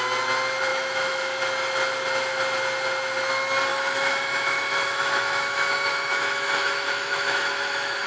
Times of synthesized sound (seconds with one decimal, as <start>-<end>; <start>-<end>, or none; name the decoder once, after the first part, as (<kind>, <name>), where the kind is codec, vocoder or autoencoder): 0.7-1.4 (autoencoder, DAC-VAE); 3.7-8.1